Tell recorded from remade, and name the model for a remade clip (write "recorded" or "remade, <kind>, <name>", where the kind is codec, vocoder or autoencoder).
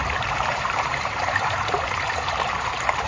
remade, vocoder, BigVGAN v2